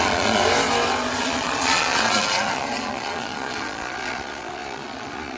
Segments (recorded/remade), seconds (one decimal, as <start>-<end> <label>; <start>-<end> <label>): 0.0-0.4 remade; 0.4-1.2 recorded; 1.2-5.4 remade